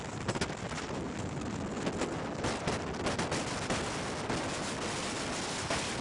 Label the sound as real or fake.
real